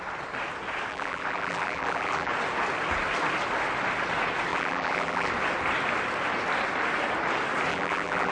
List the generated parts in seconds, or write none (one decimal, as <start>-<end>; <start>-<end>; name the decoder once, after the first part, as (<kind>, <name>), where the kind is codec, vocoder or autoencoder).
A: 0.9-2.3 (vocoder, BigVGAN v2); 4.5-5.3; 7.7-8.3